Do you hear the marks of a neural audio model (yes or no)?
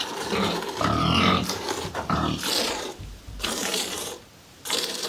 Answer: yes